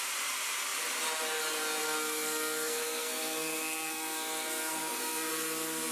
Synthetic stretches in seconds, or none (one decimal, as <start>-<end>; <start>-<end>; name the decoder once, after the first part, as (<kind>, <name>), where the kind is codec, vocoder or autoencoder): 1.8-5.3 (codec, SNAC)